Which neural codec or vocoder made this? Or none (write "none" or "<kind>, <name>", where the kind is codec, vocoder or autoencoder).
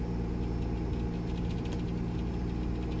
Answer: none